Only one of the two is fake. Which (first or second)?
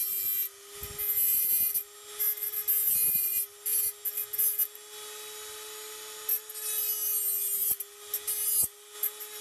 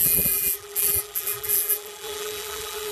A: second